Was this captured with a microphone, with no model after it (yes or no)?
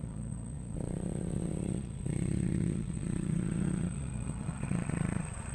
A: no